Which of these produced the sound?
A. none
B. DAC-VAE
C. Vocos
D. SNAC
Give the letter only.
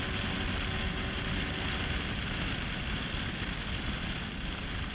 A